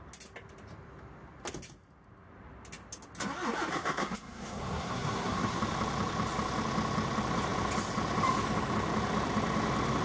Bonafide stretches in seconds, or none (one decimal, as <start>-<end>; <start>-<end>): 0.0-3.7; 5.6-10.0